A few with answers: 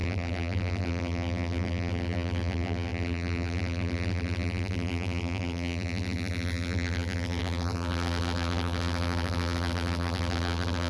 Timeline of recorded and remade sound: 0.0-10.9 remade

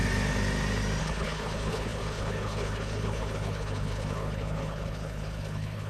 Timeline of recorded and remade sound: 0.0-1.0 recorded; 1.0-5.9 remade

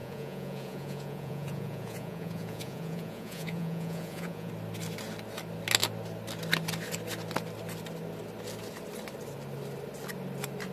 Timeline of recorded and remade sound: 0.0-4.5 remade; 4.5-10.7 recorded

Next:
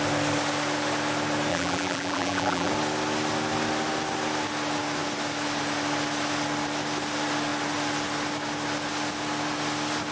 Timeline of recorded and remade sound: 0.0-1.5 recorded; 1.5-2.7 remade; 2.7-10.1 recorded